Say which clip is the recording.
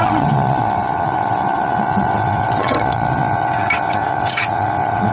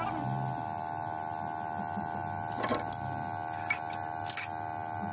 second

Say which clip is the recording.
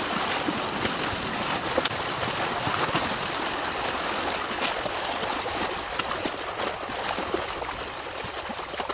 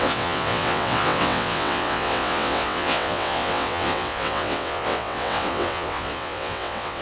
first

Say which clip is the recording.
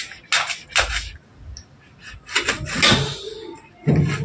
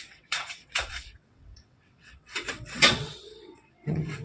first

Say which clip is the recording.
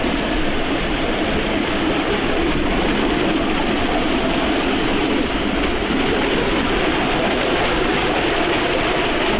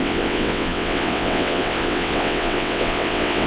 first